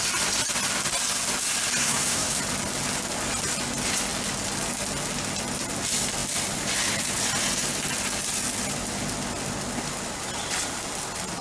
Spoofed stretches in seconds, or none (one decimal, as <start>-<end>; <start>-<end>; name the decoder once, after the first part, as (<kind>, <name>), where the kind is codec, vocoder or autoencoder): 1.8-2.4 (codec, SNAC)